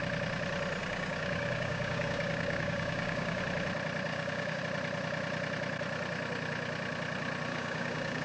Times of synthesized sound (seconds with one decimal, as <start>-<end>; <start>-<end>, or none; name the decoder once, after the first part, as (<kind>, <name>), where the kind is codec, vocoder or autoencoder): 0.8-3.4 (codec, DAC); 4.1-4.6; 7.5-8.2